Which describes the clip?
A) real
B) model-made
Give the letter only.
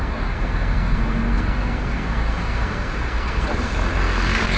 B